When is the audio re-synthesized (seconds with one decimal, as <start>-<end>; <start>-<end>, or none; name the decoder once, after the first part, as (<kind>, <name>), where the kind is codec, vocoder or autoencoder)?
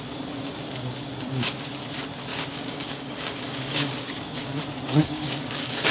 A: 2.3-4.6 (codec, DAC); 5.0-5.9